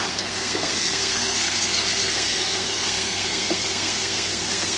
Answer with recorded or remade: remade